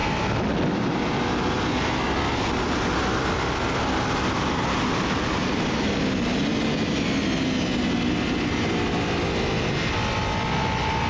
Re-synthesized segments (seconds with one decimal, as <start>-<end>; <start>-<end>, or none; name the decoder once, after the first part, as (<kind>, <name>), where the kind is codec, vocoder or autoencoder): none